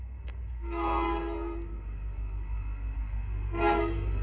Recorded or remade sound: remade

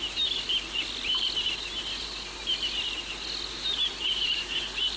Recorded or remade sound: recorded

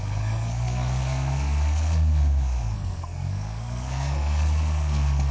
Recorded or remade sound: remade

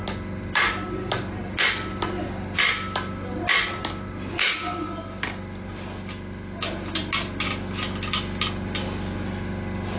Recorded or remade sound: recorded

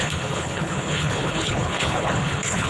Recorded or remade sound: remade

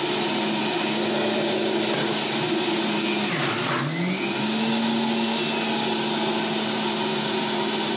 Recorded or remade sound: recorded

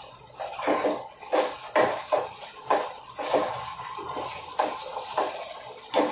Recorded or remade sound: recorded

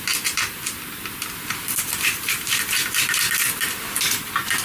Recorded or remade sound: recorded